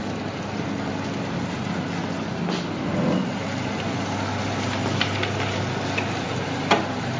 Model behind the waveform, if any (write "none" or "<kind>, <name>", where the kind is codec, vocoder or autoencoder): none